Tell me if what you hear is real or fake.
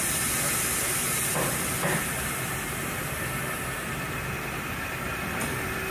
real